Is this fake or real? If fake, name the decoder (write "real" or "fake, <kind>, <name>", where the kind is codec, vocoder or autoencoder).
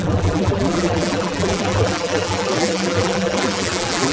fake, vocoder, BigVGAN v2